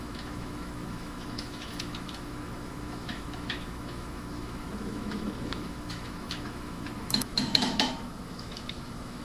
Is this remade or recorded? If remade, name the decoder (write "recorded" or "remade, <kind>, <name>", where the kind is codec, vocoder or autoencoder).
remade, autoencoder, DAC-VAE